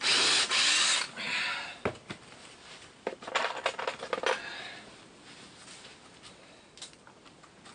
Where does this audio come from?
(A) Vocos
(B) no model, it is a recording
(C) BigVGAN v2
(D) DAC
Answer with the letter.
B